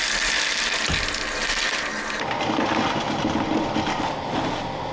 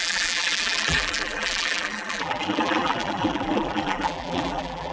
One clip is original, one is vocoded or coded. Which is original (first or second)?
first